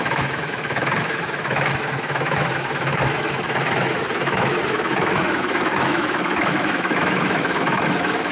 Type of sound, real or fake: fake